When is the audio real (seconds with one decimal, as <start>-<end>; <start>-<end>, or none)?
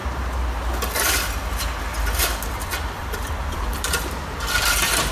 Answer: 0.0-1.9